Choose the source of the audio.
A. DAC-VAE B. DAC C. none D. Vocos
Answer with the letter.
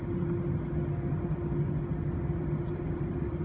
C